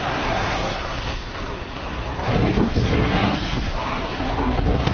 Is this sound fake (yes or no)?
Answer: yes